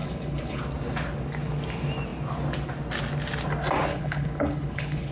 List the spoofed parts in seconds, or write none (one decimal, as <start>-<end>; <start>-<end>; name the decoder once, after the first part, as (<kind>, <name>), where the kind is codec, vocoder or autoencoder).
0.0-0.6 (codec, HILCodec); 3.9-5.1

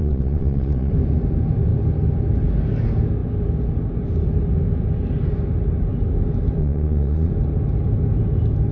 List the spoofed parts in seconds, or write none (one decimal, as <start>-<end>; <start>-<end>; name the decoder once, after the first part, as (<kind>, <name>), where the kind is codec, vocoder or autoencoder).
0.0-0.9 (vocoder, Vocos); 6.6-7.3

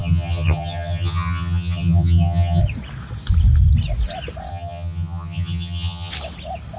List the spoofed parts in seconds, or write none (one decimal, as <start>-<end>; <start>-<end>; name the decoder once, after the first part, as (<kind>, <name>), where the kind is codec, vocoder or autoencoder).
0.0-2.6 (vocoder, HiFi-GAN); 4.5-6.1

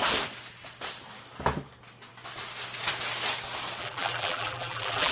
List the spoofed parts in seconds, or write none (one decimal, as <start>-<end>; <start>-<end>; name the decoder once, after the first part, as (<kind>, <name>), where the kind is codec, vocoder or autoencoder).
3.8-5.1 (vocoder, BigVGAN v2)

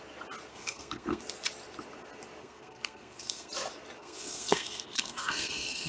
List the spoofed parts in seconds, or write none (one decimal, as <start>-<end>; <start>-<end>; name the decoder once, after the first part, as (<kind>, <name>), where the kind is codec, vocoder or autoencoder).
0.5-1.2 (codec, SNAC); 2.4-3.5; 4.0-5.9